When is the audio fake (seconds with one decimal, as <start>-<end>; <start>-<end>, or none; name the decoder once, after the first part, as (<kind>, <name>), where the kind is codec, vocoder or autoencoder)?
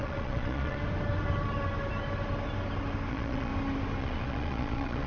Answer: 0.0-0.8 (vocoder, Vocos); 3.1-3.5; 4.0-5.1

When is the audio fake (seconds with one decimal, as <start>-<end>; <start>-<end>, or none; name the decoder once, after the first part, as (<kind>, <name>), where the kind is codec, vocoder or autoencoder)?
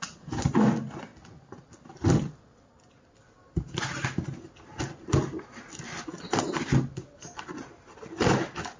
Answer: none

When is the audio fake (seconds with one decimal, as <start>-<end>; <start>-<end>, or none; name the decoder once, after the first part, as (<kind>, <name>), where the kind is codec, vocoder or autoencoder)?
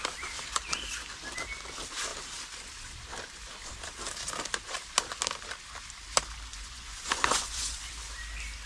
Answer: 6.5-7.9 (vocoder, Vocos)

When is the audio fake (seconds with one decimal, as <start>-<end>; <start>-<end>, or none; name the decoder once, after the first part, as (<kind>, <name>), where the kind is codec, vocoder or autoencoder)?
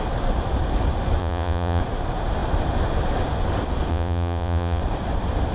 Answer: 1.2-1.8 (vocoder, Vocos); 3.9-4.8